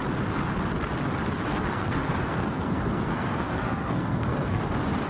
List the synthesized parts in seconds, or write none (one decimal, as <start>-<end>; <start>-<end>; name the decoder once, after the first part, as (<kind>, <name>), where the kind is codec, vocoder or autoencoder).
1.5-4.6 (codec, SNAC)